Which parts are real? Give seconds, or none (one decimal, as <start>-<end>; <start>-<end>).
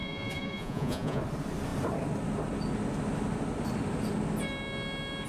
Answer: 1.2-5.3